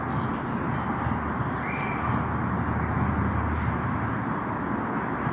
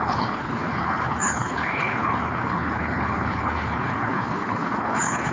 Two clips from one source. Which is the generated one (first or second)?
second